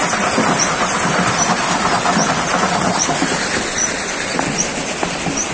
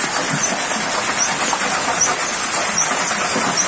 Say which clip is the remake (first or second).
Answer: first